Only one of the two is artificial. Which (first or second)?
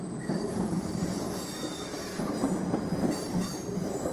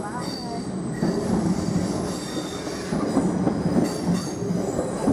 first